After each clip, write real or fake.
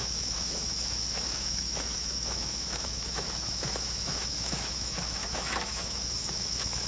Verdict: fake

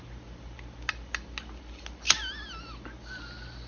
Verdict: real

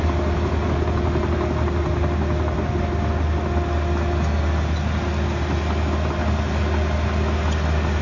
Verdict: real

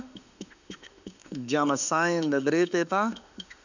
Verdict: fake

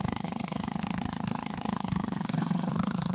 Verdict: fake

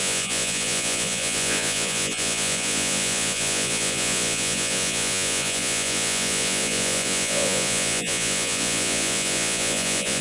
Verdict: fake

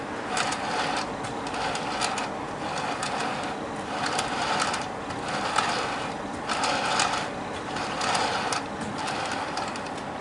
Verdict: real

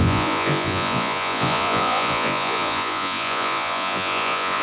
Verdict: fake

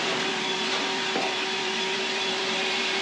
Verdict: fake